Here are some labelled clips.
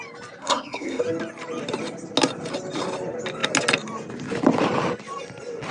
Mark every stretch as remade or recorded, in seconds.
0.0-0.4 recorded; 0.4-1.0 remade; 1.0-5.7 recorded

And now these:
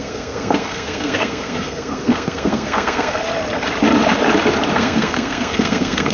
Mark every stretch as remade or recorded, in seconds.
0.0-3.2 remade; 3.2-4.7 recorded; 4.7-6.1 remade

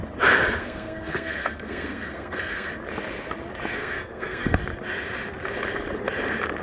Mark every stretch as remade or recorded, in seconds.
0.0-0.6 recorded; 0.6-2.7 remade; 2.7-3.8 recorded; 3.8-4.6 remade; 4.6-6.6 recorded

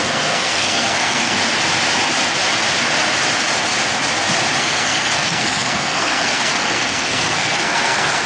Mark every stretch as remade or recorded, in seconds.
0.0-1.4 remade; 1.4-4.6 recorded; 4.6-8.3 remade

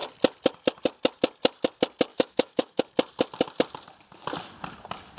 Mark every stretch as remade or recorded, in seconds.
0.0-2.1 recorded; 2.1-2.8 remade; 2.8-5.2 recorded

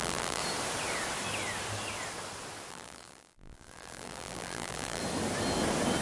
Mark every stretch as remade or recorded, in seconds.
0.0-0.4 remade; 0.4-2.7 recorded; 2.7-5.0 remade; 5.0-6.0 recorded

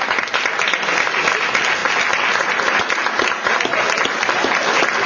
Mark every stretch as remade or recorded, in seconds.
0.0-5.1 recorded

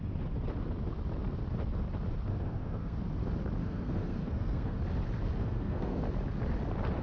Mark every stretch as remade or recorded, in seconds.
0.0-2.3 recorded; 2.3-3.0 remade; 3.0-3.6 recorded; 3.6-4.8 remade; 4.8-5.4 recorded; 5.4-6.0 remade; 6.0-7.0 recorded